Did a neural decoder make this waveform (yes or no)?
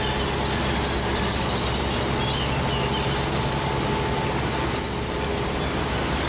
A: no